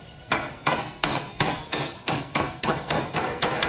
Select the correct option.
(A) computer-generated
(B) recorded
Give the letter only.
A